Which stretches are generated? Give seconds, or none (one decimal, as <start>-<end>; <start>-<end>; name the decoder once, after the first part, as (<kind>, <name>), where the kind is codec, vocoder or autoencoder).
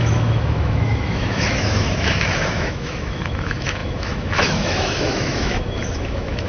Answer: 0.0-6.5 (autoencoder, DAC-VAE)